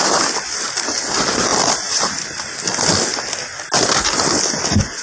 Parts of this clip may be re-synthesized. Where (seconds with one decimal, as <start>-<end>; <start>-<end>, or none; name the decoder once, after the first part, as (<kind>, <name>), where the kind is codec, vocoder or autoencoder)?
1.5-2.6 (vocoder, BigVGAN v2)